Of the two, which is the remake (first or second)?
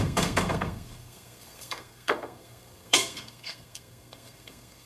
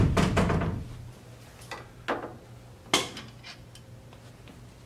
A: first